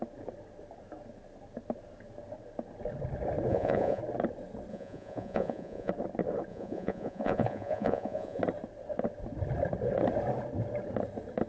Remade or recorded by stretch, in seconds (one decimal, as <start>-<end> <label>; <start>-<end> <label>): 0.0-3.5 recorded; 3.5-4.0 remade; 4.0-4.7 recorded; 4.7-5.9 remade; 5.9-6.5 recorded; 6.5-8.4 remade; 8.4-11.5 recorded